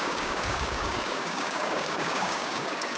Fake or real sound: fake